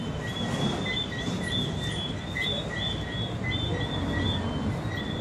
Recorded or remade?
recorded